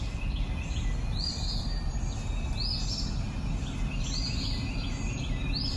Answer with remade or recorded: recorded